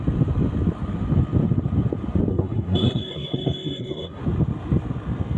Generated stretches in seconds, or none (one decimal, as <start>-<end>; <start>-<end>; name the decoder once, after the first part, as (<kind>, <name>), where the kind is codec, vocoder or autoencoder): 2.3-4.2 (codec, SNAC)